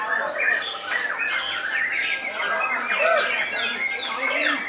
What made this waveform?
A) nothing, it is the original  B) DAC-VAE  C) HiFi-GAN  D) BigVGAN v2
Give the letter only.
A